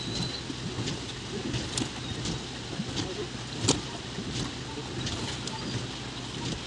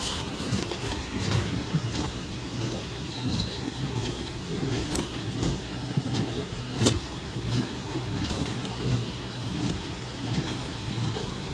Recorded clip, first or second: first